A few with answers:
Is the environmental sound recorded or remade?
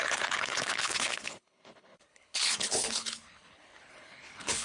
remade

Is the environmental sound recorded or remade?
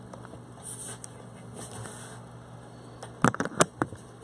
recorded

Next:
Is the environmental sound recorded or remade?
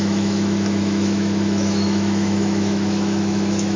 remade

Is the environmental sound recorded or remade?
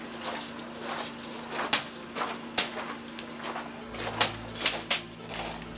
recorded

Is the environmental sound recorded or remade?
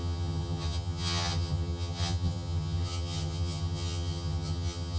remade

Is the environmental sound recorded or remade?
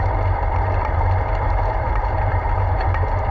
remade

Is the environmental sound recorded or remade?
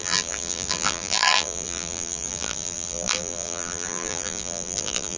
remade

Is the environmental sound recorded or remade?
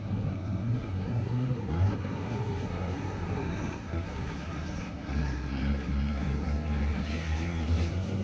remade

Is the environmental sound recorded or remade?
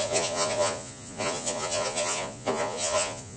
remade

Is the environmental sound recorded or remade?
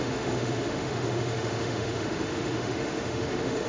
remade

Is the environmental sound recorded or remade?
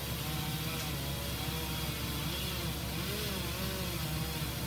recorded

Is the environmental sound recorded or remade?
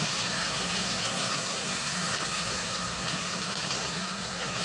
remade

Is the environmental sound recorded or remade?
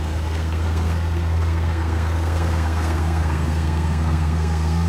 remade